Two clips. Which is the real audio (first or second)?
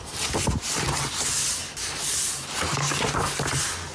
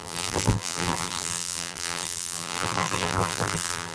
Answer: first